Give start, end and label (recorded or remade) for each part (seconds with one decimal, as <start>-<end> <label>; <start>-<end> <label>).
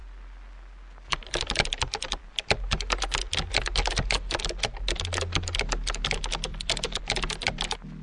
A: 0.0-6.5 recorded; 6.5-7.0 remade; 7.0-8.0 recorded